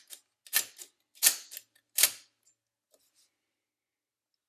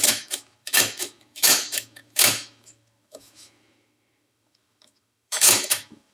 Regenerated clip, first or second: second